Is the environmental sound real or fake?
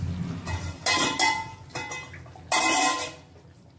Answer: real